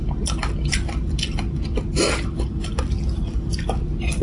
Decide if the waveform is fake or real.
real